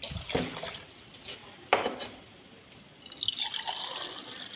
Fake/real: real